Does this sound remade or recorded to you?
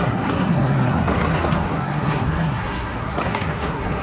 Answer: remade